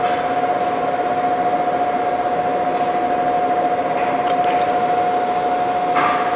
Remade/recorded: recorded